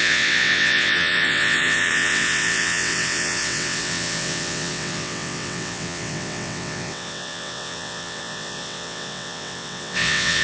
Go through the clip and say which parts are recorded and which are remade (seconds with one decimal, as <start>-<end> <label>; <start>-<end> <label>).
0.0-10.4 remade